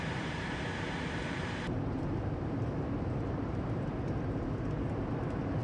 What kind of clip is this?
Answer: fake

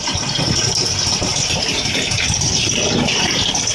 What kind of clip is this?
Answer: fake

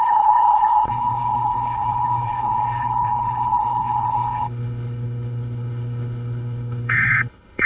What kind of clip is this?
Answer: fake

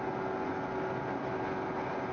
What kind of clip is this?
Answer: real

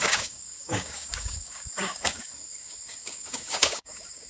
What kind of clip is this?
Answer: fake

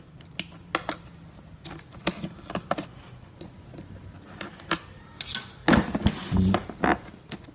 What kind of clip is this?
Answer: real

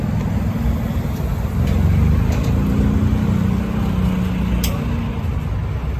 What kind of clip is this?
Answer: real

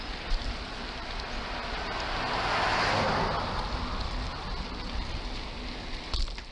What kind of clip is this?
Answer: real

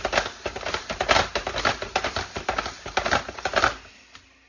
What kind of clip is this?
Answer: real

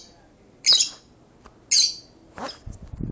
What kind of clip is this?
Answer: real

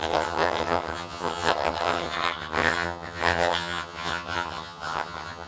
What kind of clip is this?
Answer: fake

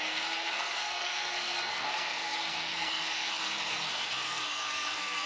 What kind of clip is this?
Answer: fake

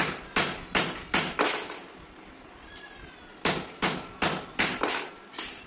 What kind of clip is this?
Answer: real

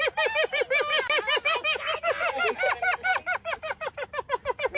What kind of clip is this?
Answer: real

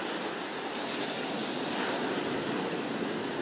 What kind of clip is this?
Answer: real